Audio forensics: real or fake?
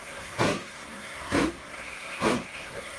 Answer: fake